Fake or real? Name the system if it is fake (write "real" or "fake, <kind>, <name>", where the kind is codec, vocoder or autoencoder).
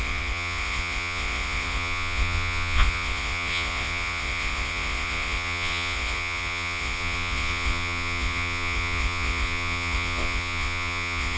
fake, vocoder, Vocos